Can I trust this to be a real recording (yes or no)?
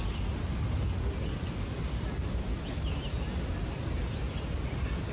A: yes